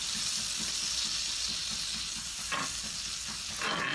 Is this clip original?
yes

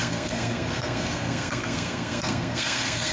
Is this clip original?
no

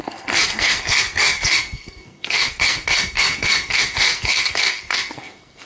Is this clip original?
no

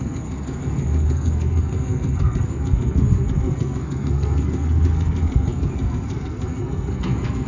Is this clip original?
no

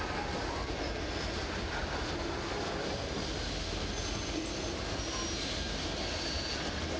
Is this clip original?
yes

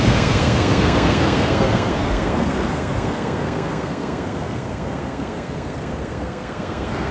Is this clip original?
no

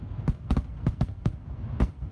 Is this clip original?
no